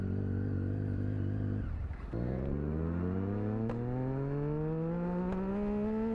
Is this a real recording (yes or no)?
yes